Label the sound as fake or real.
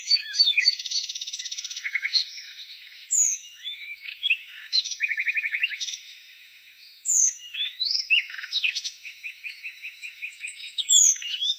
fake